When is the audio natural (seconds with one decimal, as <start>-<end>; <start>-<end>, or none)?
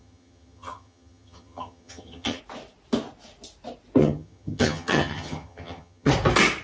2.4-4.0; 6.1-6.6